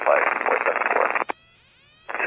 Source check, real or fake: real